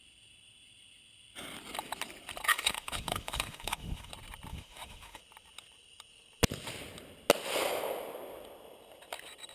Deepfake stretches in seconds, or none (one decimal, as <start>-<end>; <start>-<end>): 2.5-4.1; 4.5-5.2